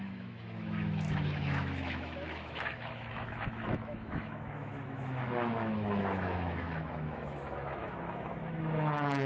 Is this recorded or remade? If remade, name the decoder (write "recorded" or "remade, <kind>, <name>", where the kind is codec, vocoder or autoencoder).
remade, autoencoder, DAC-VAE